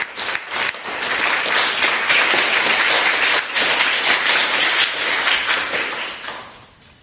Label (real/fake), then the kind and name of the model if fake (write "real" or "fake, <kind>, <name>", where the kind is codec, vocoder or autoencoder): real